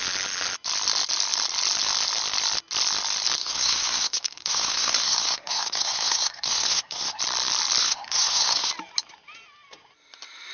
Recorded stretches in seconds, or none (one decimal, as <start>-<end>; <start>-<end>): 0.0-3.4; 7.2-7.8; 8.7-10.5